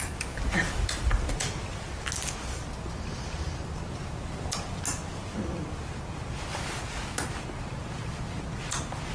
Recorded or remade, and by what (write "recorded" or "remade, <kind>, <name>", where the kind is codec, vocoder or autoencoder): recorded